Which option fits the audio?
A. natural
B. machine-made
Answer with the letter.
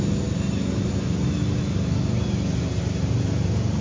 A